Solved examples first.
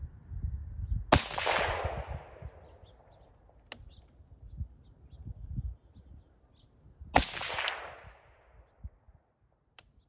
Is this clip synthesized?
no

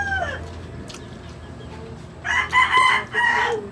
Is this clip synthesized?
no